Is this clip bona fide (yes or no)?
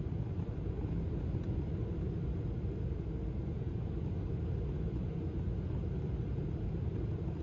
yes